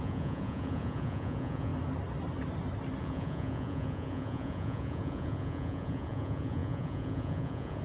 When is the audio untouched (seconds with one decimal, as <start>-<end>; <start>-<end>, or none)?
1.7-3.0